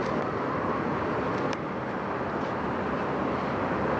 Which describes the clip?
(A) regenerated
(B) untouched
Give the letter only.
B